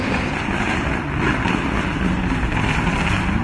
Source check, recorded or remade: recorded